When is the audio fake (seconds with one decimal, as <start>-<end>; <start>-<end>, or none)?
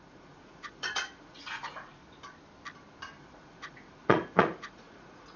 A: 0.0-2.0; 3.2-5.4